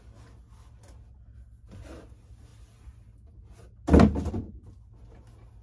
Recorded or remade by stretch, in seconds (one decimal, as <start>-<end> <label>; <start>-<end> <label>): 0.0-5.6 recorded